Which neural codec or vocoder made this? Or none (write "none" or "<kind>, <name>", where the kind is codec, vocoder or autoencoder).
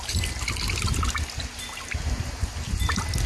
none